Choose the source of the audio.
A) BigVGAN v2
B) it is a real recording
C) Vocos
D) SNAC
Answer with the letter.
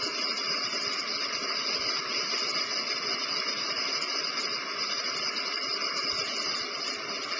B